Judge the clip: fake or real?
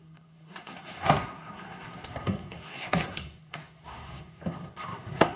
fake